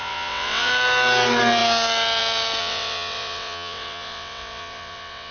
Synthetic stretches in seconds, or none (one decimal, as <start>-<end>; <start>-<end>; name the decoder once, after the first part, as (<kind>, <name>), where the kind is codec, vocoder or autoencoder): 0.0-0.7 (vocoder, WaveNeXt); 2.6-5.3